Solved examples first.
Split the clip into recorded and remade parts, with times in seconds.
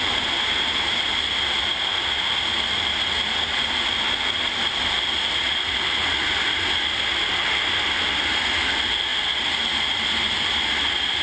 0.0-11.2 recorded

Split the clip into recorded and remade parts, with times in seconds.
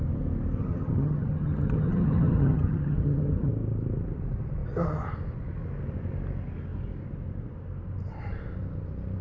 0.0-0.6 recorded; 0.6-3.5 remade; 3.5-9.2 recorded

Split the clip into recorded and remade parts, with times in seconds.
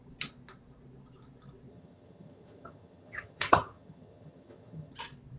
0.0-1.7 recorded; 1.7-4.9 remade; 4.9-5.4 recorded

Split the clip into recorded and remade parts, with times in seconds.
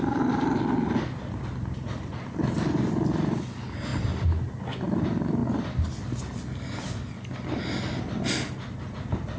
0.0-9.4 recorded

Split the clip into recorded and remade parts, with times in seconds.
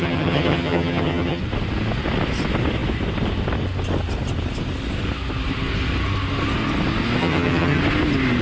0.0-1.4 remade; 1.4-7.2 recorded; 7.2-7.8 remade; 7.8-8.4 recorded